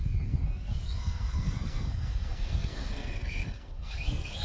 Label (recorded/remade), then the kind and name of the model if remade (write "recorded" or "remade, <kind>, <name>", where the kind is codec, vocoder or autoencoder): remade, codec, SNAC